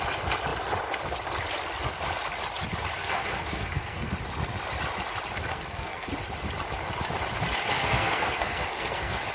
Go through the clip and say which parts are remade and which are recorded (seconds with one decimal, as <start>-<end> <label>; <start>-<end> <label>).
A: 0.0-3.0 recorded; 3.0-4.1 remade; 4.1-5.5 recorded; 5.5-6.1 remade; 6.1-7.7 recorded; 7.7-9.3 remade